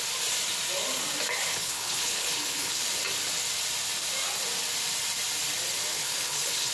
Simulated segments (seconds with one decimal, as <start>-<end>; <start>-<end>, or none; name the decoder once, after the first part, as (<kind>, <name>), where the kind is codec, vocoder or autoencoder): 1.5-2.8 (codec, HILCodec); 5.9-6.7